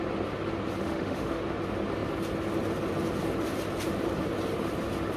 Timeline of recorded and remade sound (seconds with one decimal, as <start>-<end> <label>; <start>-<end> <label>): 0.0-0.8 recorded; 0.8-1.4 remade; 1.4-5.2 recorded